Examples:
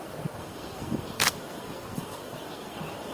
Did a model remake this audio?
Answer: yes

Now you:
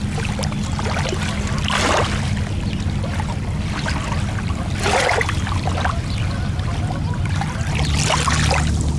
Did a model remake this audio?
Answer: no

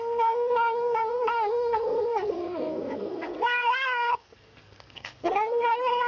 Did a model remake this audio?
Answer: yes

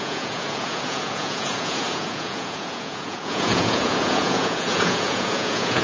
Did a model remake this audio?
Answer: yes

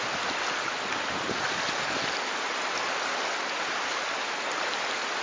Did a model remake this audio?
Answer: no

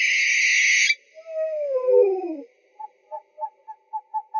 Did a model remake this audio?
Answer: no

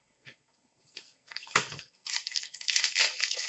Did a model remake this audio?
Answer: yes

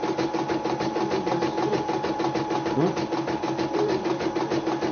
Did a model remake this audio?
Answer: no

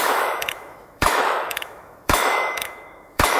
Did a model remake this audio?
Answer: yes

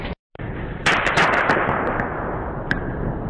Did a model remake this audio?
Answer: yes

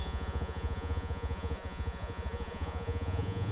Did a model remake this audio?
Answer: yes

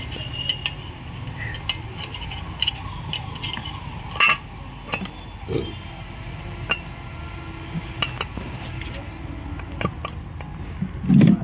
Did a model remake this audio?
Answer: no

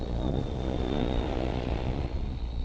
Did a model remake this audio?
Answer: yes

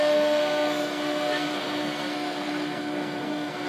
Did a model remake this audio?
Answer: yes